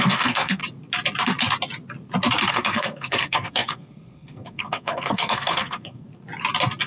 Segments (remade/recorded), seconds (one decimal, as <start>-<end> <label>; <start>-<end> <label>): 0.0-0.6 remade; 0.6-2.5 recorded; 2.5-6.1 remade; 6.1-6.9 recorded